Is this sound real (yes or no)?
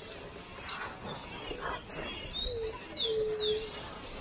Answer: yes